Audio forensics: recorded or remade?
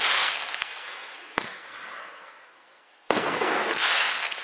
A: remade